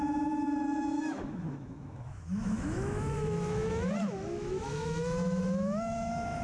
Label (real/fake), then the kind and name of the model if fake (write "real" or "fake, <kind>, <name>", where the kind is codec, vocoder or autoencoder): fake, autoencoder, DAC-VAE